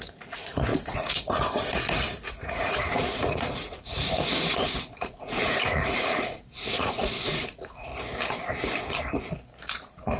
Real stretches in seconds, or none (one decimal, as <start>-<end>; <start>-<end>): 7.9-9.6